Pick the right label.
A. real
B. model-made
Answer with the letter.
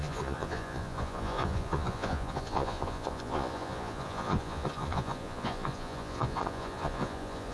B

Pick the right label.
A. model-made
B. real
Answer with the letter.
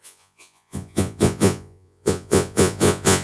A